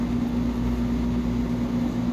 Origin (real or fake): real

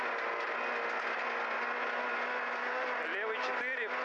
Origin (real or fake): real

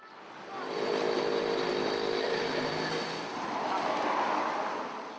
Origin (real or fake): real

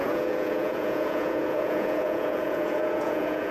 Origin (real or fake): fake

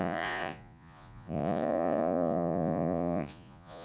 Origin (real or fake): fake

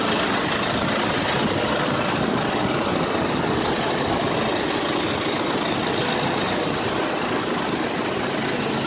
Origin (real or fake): real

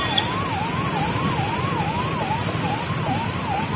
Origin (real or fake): real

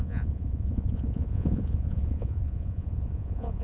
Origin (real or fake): fake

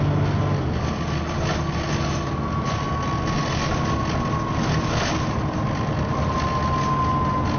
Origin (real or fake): real